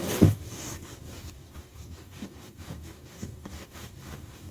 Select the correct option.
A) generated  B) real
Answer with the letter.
A